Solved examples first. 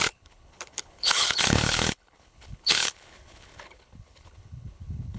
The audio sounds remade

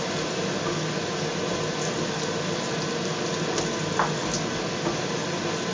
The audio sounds recorded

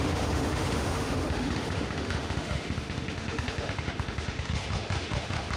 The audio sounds remade